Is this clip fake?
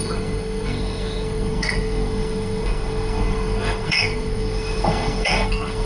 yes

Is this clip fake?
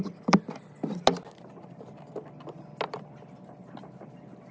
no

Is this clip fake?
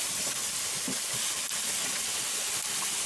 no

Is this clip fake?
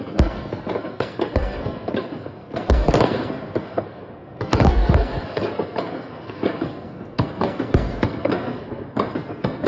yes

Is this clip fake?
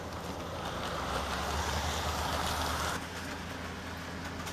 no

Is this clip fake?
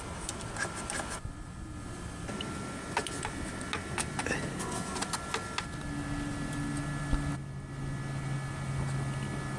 no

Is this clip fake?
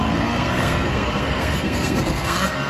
yes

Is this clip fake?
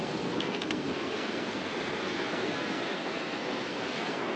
yes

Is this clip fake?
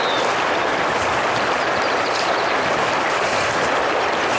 no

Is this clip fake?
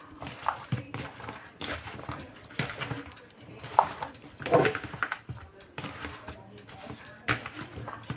no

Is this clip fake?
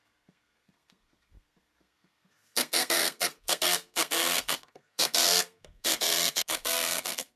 yes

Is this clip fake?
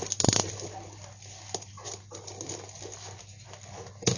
no